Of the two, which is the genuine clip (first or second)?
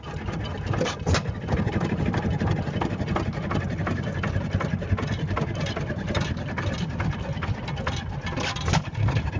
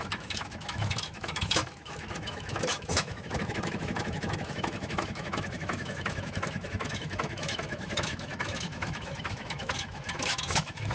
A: first